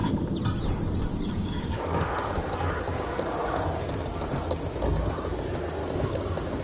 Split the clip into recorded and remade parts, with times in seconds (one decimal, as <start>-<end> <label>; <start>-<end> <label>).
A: 0.0-1.1 recorded; 1.1-5.1 remade; 5.1-5.8 recorded; 5.8-6.6 remade

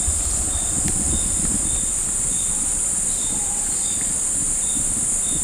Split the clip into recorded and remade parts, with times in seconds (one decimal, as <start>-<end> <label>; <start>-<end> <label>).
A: 0.0-1.5 recorded; 1.5-3.9 remade; 3.9-5.4 recorded